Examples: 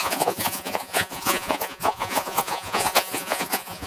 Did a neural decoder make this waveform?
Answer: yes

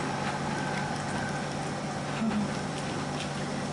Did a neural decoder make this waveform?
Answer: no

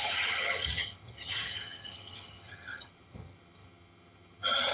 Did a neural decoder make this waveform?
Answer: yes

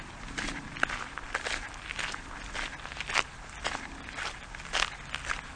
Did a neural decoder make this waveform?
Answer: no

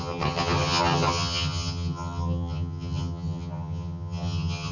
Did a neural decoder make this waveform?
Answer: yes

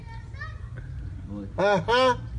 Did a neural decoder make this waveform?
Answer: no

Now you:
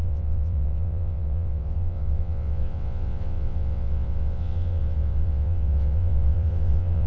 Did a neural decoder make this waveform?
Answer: yes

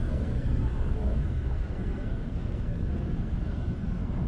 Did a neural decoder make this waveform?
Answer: yes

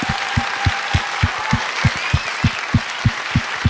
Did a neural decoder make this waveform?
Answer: no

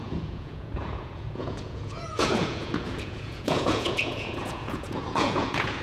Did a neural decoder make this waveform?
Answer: yes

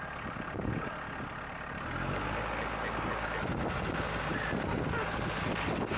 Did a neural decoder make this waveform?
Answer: no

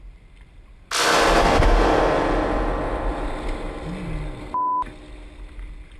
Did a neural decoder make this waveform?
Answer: no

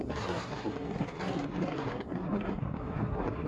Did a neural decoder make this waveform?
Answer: yes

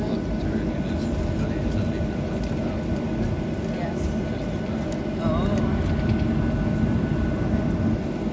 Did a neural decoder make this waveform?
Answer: no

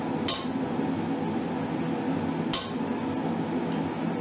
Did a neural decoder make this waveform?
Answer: no